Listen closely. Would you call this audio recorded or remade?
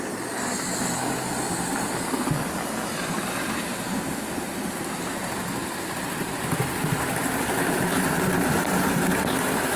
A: recorded